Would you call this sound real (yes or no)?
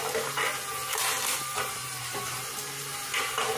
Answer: yes